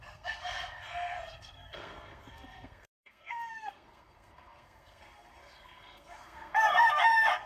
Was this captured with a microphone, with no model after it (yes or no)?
no